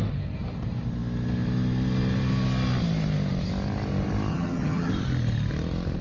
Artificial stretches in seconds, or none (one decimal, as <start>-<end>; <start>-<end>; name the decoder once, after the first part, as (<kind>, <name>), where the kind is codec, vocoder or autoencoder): 4.3-4.9 (vocoder, HiFi-GAN)